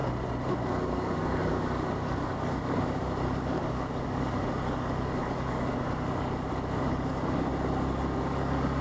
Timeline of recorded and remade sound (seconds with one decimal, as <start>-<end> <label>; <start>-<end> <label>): 0.0-0.5 recorded; 0.5-7.5 remade; 7.5-8.2 recorded; 8.2-8.8 remade